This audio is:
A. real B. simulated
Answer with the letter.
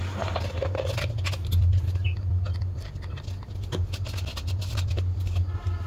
A